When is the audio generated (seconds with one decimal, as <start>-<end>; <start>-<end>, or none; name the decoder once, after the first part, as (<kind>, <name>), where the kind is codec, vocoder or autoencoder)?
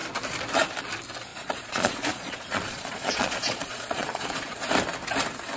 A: 1.3-4.7 (vocoder, Vocos)